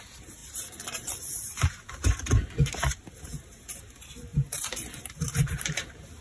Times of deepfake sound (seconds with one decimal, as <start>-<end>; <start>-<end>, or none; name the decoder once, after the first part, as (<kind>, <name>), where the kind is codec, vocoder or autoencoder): 0.0-6.2 (vocoder, BigVGAN v2)